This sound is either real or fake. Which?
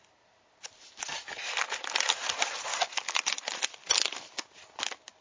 real